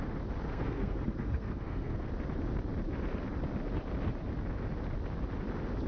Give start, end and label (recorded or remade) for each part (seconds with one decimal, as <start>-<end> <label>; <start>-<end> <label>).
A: 0.0-0.5 recorded; 0.5-2.1 remade; 2.1-5.9 recorded